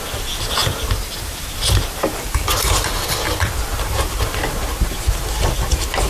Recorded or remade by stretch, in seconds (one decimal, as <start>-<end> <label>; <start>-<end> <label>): 0.0-6.1 recorded